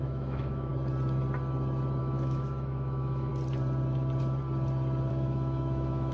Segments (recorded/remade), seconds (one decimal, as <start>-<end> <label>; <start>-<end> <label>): 0.0-0.7 remade; 0.7-2.0 recorded; 2.0-3.3 remade; 3.3-5.1 recorded; 5.1-6.1 remade